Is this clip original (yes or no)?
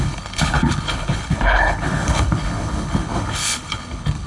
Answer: no